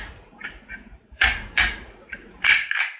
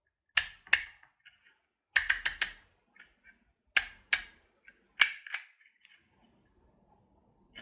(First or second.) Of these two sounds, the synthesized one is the first